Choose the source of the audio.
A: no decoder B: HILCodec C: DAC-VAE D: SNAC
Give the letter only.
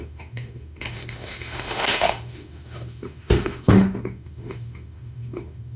C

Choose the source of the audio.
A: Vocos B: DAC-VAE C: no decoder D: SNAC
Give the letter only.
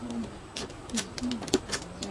C